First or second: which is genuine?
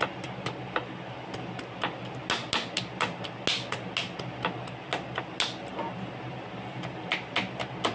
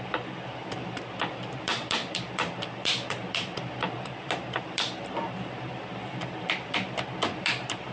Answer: first